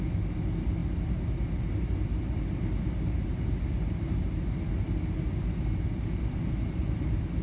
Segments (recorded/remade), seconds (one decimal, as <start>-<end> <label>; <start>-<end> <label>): 0.0-7.4 recorded